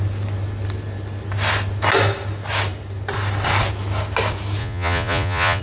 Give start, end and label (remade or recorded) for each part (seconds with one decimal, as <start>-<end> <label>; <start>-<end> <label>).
0.0-4.6 recorded; 4.6-5.6 remade